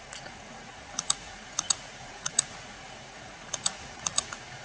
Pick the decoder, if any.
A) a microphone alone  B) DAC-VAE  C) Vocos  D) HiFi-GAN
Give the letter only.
C